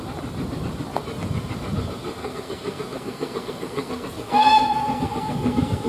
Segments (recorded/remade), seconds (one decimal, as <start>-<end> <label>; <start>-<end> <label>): 0.0-2.2 recorded; 2.2-5.9 remade